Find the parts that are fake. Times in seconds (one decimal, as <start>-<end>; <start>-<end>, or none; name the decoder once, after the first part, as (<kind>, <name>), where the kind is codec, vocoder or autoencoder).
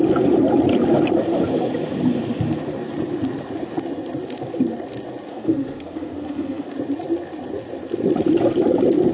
5.3-6.7 (codec, SNAC)